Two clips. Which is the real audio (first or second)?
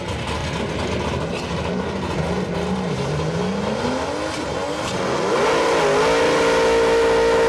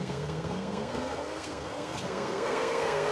first